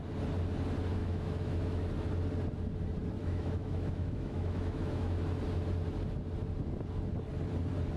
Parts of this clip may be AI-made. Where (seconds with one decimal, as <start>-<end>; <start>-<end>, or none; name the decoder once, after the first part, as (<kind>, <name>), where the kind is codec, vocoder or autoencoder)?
1.0-1.9 (autoencoder, DAC-VAE); 3.2-5.2